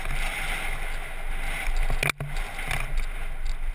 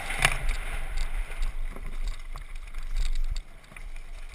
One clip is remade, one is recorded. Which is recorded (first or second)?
first